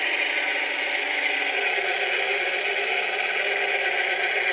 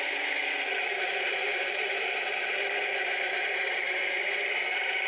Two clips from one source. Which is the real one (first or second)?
first